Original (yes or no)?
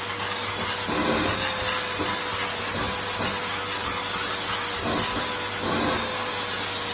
yes